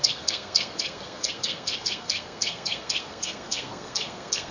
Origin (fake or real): fake